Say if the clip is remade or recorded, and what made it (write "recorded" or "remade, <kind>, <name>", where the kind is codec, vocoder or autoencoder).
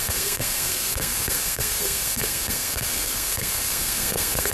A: remade, codec, SNAC